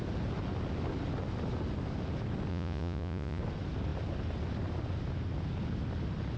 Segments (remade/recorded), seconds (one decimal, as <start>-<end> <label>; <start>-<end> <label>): 0.0-2.5 recorded; 2.5-3.4 remade; 3.4-6.4 recorded